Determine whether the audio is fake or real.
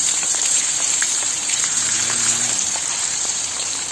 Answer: fake